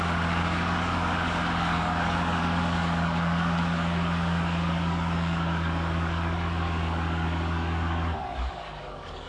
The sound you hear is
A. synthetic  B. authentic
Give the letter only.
A